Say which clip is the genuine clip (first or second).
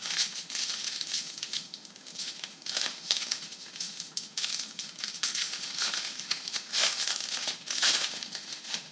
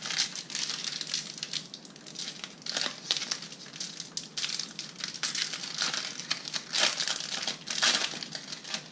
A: second